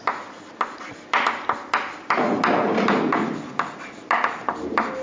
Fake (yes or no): no